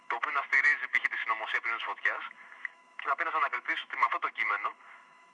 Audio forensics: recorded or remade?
remade